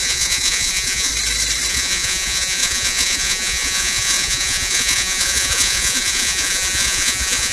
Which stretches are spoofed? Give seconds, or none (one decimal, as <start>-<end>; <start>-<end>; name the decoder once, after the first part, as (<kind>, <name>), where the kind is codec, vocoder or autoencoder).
0.0-1.1 (vocoder, Vocos); 1.7-7.5